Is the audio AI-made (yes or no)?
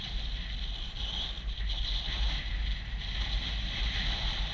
no